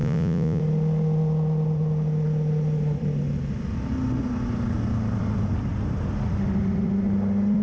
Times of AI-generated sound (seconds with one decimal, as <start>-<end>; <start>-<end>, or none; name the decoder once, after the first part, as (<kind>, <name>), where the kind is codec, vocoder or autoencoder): 0.0-0.6 (vocoder, Vocos)